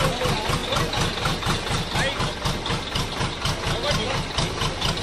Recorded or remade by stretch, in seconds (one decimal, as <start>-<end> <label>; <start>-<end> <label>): 0.0-5.0 recorded